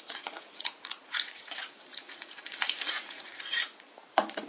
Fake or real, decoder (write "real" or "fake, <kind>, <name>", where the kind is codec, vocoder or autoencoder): fake, vocoder, Vocos